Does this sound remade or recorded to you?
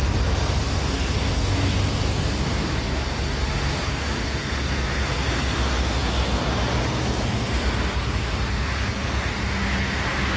recorded